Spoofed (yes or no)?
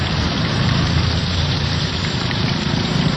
yes